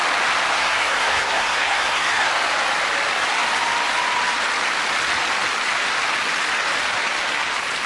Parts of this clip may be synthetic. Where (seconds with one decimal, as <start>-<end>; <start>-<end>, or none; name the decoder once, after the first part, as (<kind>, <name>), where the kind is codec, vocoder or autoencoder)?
0.5-2.3 (codec, SNAC)